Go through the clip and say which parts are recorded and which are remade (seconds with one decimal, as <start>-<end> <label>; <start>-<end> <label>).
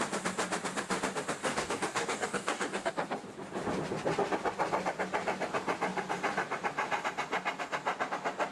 0.0-1.4 recorded; 1.4-2.9 remade; 2.9-8.5 recorded